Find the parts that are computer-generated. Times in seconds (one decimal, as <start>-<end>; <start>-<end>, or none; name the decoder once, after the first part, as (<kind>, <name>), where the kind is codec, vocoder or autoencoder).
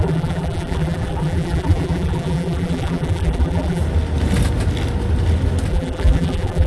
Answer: 0.0-3.8 (vocoder, BigVGAN v2); 5.7-6.7